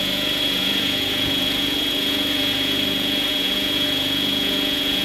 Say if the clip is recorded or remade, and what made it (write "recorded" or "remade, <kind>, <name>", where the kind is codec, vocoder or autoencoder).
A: remade, vocoder, Vocos